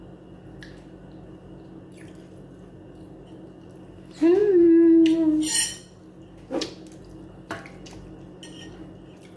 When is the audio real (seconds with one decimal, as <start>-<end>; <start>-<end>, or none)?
0.0-9.4